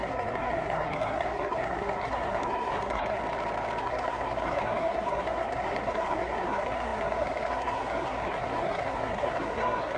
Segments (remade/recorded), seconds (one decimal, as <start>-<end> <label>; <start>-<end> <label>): 0.0-3.2 remade; 3.2-3.8 recorded; 3.8-10.0 remade